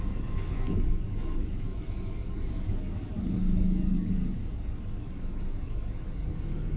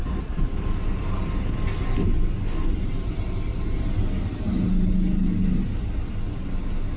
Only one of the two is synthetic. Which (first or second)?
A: first